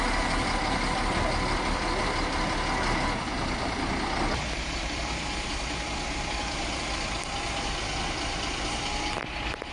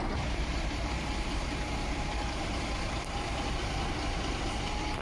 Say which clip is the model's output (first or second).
second